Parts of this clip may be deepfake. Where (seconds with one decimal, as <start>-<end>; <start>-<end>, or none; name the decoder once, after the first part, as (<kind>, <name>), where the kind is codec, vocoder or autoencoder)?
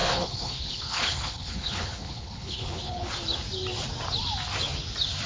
0.0-3.1 (codec, HILCodec)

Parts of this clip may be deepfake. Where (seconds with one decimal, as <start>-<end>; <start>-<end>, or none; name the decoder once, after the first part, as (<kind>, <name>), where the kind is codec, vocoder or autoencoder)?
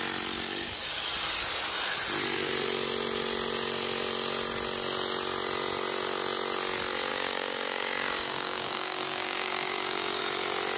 7.1-10.2 (codec, DAC)